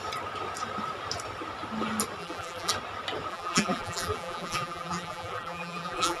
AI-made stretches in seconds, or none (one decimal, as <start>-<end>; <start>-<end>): 2.2-2.7; 3.3-6.2